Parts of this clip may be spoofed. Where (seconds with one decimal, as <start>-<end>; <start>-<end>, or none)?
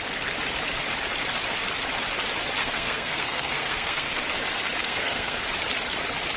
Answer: 2.6-4.2; 4.8-5.4